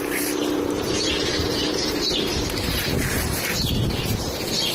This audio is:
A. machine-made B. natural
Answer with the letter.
B